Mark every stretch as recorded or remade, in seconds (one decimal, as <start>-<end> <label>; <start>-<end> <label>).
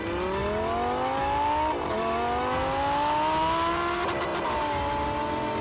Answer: 0.0-5.6 recorded